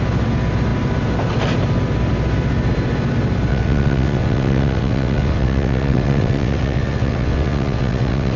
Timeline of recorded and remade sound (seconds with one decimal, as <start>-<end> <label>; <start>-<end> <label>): 0.0-3.5 recorded; 3.5-8.4 remade